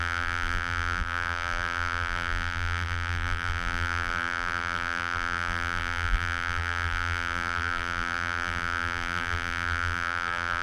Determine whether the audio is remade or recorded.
remade